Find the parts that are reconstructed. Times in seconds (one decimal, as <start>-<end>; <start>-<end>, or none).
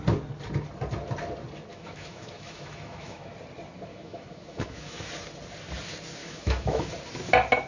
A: 1.7-3.3; 3.9-5.1; 6.2-6.9